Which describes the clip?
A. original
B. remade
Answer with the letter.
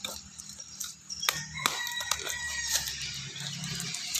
B